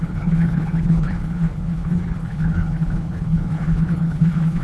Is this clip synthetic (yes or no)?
yes